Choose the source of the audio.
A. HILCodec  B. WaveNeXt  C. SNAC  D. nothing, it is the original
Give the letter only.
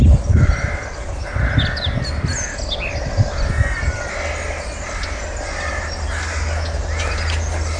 D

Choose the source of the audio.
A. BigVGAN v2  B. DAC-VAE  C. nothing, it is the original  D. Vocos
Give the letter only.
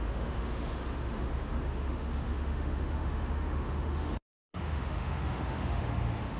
B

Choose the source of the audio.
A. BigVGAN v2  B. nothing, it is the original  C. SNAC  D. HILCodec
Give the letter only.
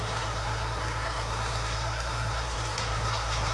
C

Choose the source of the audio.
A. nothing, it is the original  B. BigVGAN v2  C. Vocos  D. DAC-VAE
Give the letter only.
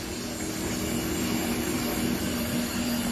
A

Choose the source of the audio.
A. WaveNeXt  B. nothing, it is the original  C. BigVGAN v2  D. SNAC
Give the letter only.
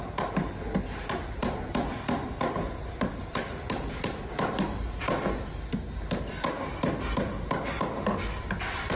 B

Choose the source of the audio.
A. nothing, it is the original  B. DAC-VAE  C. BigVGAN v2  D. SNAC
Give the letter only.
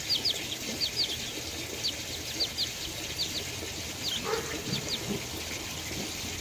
A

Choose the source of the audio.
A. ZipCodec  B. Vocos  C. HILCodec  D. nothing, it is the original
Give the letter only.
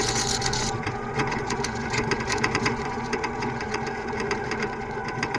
B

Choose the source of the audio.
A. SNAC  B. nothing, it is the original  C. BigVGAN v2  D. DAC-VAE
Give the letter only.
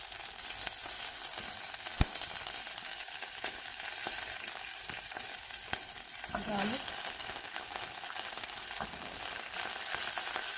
B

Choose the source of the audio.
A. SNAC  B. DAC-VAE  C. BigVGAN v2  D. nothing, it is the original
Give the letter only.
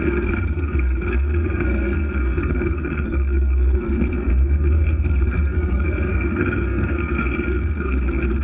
A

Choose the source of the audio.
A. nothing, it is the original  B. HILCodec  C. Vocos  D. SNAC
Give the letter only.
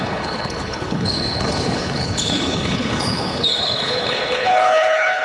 B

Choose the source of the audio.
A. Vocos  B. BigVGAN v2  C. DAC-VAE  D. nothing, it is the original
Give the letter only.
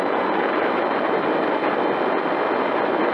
D